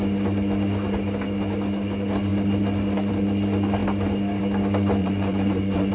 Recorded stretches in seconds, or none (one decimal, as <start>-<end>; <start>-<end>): 0.0-5.0